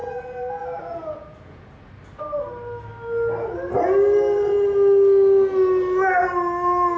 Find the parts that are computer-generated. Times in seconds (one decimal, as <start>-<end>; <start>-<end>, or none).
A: 0.0-1.9